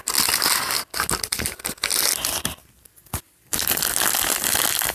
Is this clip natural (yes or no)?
yes